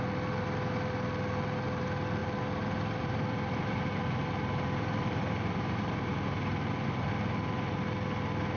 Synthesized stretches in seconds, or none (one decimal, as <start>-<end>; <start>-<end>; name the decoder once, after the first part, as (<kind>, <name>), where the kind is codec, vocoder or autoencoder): 2.2-7.1 (vocoder, BigVGAN v2)